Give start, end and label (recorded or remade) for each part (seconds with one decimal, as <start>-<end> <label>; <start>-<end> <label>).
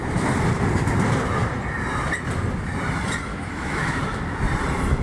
0.0-3.3 recorded; 3.3-4.0 remade; 4.0-5.0 recorded